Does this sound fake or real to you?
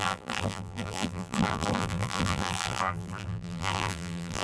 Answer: fake